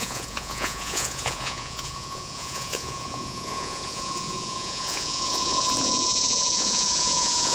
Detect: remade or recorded remade